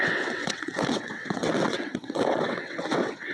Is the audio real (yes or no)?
no